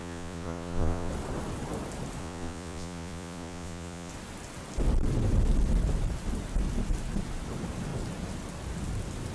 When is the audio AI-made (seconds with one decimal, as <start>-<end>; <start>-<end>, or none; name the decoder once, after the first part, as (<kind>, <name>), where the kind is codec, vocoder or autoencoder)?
0.0-1.1 (vocoder, Vocos); 2.2-4.1